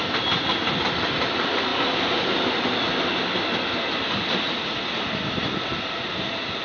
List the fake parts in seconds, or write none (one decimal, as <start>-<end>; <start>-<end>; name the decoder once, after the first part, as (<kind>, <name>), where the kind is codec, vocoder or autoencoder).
none